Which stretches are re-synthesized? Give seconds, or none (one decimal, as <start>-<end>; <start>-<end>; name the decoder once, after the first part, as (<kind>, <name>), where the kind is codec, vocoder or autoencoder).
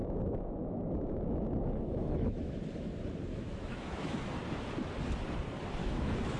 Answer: 0.0-2.6 (autoencoder, DAC-VAE); 3.3-4.3; 5.8-6.4